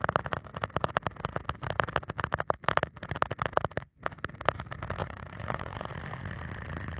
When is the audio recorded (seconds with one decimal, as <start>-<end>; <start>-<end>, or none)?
0.0-5.0; 5.9-7.0